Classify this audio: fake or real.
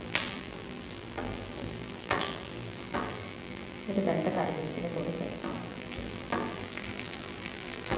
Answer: fake